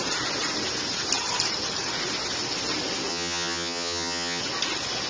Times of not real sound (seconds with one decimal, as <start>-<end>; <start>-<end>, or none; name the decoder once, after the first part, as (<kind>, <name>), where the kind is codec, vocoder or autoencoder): 3.1-4.4 (vocoder, HiFi-GAN)